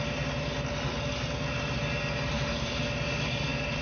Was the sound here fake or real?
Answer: real